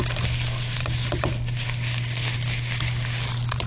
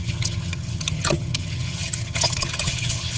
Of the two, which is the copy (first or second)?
second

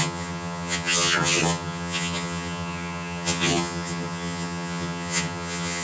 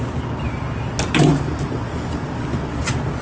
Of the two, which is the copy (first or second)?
first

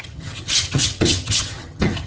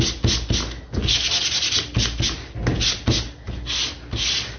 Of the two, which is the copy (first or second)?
first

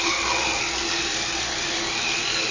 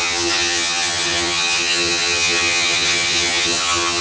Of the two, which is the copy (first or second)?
second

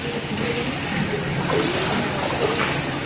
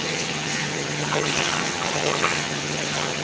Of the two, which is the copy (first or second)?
second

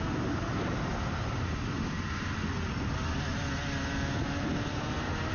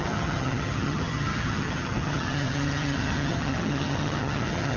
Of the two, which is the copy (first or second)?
second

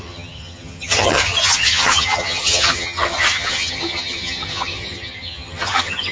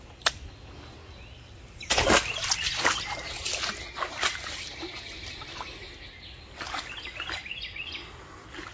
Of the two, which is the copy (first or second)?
first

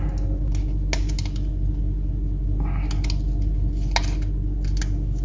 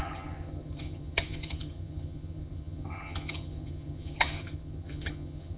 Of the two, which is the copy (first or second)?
second